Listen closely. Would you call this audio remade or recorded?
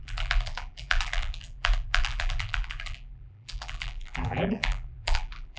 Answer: remade